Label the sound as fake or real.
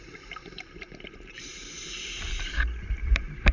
fake